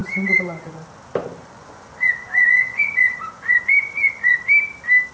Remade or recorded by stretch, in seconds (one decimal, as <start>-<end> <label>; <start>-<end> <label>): 0.0-0.7 remade; 0.7-1.4 recorded; 1.4-4.4 remade; 4.4-5.1 recorded